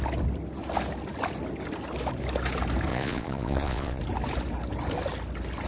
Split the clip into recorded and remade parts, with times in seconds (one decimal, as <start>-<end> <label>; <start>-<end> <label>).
0.0-2.9 recorded; 2.9-4.0 remade; 4.0-5.7 recorded